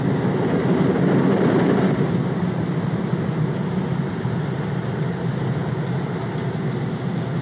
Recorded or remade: recorded